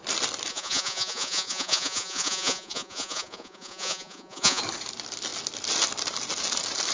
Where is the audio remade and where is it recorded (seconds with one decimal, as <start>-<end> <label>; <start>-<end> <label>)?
0.0-0.5 recorded; 0.5-4.6 remade; 4.6-6.9 recorded